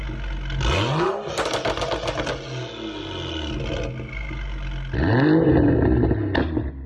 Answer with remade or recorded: recorded